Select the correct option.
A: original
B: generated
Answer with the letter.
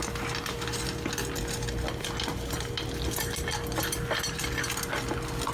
A